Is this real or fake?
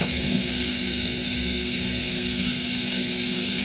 fake